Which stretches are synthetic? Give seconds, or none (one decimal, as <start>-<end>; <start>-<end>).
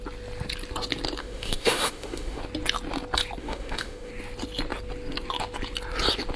1.2-2.4; 3.4-4.1